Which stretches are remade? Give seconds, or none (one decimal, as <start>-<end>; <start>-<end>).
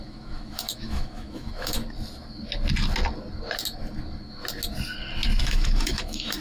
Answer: 0.0-1.8; 5.4-6.4